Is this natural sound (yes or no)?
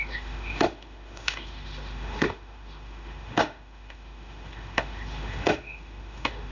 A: no